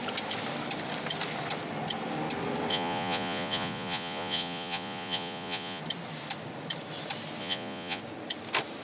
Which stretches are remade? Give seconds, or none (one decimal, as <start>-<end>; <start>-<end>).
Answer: 2.7-5.8; 7.4-8.0